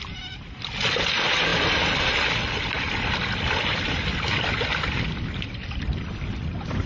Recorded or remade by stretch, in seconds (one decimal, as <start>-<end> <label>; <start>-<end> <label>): 0.0-1.5 recorded; 1.5-5.6 remade; 5.6-6.9 recorded